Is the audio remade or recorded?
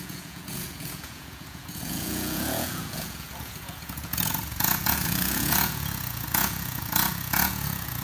remade